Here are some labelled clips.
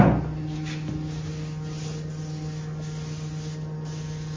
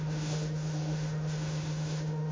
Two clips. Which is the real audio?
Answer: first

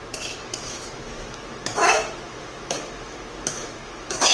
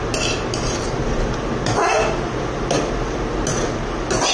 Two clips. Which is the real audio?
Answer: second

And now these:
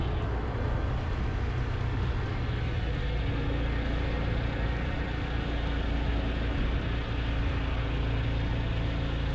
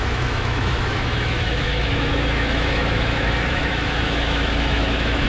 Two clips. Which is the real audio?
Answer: first